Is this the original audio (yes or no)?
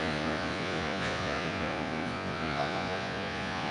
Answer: no